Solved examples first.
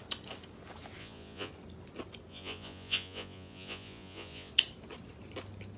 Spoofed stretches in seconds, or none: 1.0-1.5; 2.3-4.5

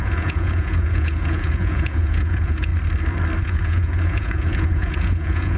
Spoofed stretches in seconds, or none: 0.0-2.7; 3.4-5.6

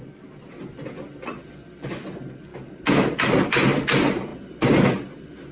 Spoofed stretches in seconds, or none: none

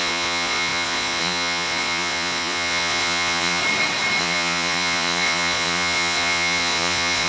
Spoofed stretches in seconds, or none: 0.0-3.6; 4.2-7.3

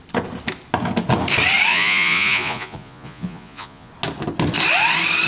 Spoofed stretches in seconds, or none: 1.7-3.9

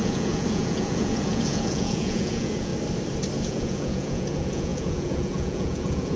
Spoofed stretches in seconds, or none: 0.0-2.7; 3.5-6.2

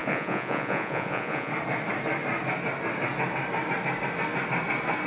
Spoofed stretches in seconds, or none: 0.0-1.5

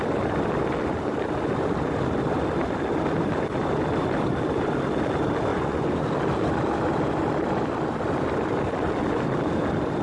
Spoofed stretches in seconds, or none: 5.5-6.1